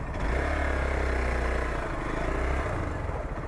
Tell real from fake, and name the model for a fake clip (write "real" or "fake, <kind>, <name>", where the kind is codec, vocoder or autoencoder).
real